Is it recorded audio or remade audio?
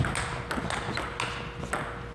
recorded